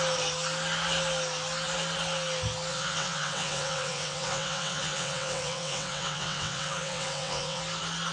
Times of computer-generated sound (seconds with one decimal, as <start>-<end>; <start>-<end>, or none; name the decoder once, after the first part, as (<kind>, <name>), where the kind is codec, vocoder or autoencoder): 2.7-7.6 (vocoder, WaveNeXt)